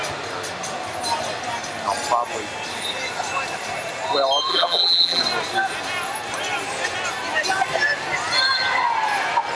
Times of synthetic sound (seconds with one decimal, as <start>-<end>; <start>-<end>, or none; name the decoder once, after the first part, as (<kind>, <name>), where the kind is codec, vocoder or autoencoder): 4.5-5.2 (vocoder, BigVGAN v2)